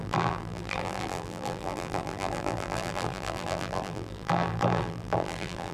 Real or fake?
fake